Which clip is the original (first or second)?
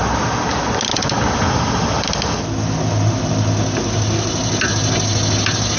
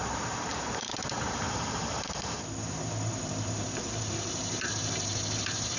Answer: first